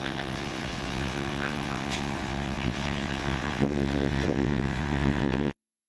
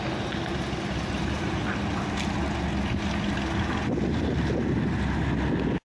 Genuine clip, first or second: second